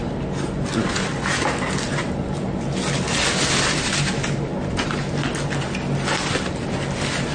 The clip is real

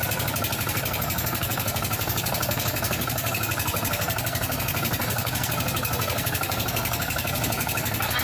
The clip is fake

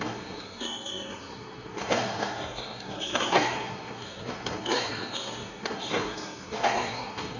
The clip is fake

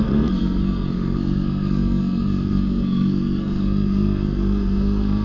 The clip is fake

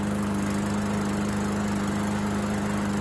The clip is real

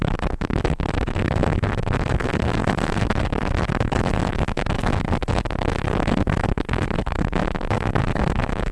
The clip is fake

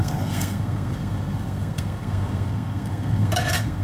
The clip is fake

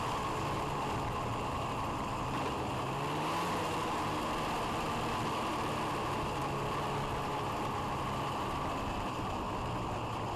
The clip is real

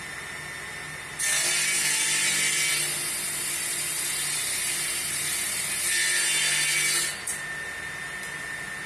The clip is real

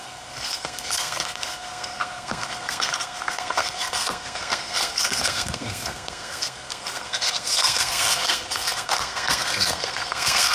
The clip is fake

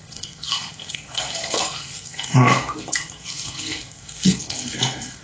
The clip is fake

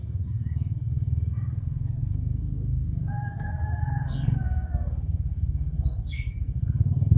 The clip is fake